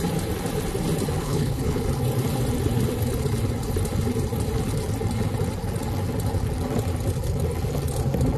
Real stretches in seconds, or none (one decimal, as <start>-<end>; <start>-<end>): 0.0-1.2; 1.8-8.4